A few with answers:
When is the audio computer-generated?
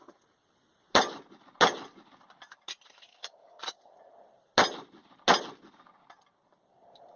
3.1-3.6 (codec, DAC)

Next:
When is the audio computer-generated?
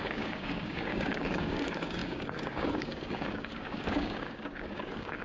0.0-5.2 (codec, DAC)